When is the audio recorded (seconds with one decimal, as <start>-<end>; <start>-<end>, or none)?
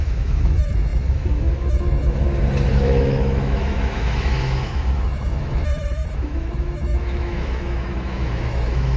2.2-2.7